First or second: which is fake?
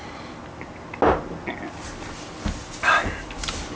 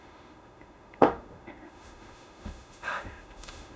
second